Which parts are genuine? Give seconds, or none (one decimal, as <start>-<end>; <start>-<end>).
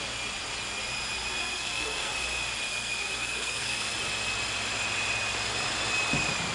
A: 0.0-1.4; 2.1-2.7; 3.9-6.5